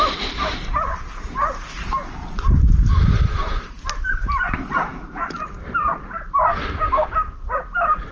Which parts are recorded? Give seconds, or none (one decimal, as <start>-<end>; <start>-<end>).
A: 0.0-8.1